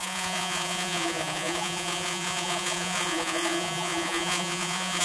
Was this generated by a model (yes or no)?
yes